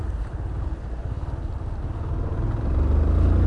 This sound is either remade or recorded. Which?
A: recorded